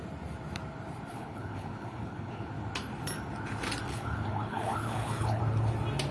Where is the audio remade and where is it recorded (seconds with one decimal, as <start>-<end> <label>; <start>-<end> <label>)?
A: 0.0-1.1 recorded; 1.1-2.5 remade; 2.5-3.9 recorded; 3.9-5.4 remade; 5.4-6.1 recorded

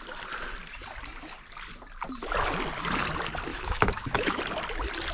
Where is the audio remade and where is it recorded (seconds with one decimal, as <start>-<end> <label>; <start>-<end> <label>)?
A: 0.0-3.5 recorded; 3.5-4.4 remade; 4.4-5.1 recorded

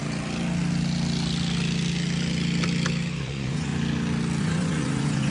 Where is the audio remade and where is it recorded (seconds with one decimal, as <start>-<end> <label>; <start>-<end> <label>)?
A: 0.0-3.2 recorded; 3.2-3.7 remade; 3.7-4.4 recorded; 4.4-5.3 remade

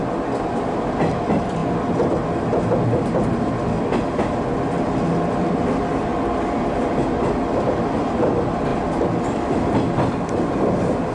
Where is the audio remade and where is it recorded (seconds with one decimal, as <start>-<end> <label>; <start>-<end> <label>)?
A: 0.0-11.1 recorded

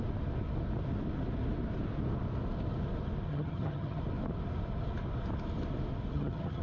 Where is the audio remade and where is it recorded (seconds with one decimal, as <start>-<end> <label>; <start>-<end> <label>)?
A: 0.0-3.3 recorded; 3.3-4.0 remade; 4.0-6.1 recorded; 6.1-6.6 remade

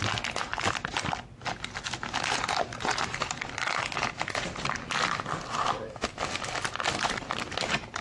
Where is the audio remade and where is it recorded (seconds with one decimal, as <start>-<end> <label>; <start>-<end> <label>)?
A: 0.0-2.7 recorded; 2.7-3.8 remade; 3.8-8.0 recorded

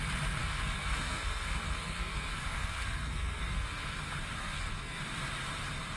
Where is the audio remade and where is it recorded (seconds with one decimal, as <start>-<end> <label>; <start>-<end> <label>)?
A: 0.0-0.4 recorded; 0.4-4.0 remade; 4.0-4.4 recorded; 4.4-5.0 remade; 5.0-6.0 recorded

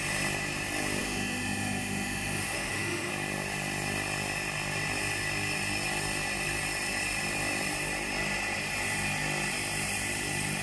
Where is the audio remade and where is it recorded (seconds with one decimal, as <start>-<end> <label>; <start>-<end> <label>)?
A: 0.0-1.0 recorded; 1.0-3.1 remade; 3.1-10.6 recorded